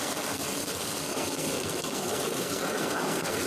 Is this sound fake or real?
fake